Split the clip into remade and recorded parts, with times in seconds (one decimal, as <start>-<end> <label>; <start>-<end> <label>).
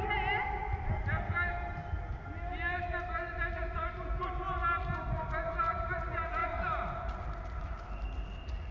0.0-8.7 recorded